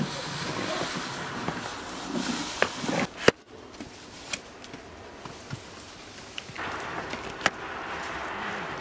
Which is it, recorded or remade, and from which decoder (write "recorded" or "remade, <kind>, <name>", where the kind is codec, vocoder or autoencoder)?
recorded